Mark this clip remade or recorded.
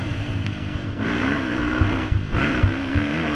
remade